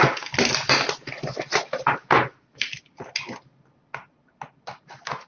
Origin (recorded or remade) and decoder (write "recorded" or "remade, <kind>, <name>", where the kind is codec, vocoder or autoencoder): recorded